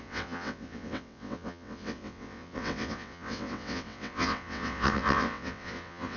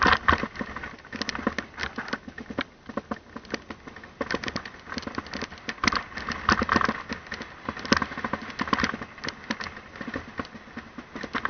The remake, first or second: first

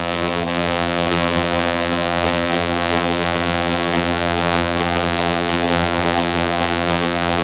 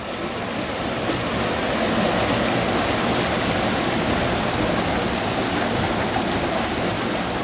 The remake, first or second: first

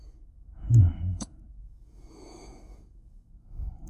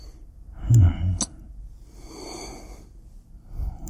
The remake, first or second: first